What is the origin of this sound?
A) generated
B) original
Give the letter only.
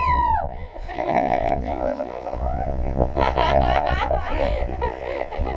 A